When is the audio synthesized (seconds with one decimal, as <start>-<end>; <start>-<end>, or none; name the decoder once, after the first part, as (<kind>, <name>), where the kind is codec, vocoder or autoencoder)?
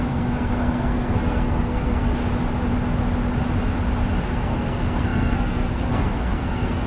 0.0-2.1 (codec, SNAC); 4.2-6.9